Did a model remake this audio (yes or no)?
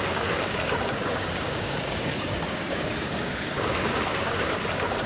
yes